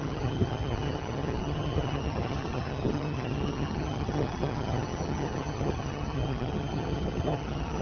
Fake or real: fake